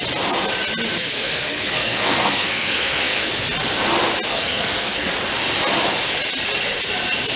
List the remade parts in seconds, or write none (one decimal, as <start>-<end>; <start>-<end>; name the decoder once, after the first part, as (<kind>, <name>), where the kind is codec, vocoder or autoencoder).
1.0-3.3 (codec, SNAC); 4.3-5.1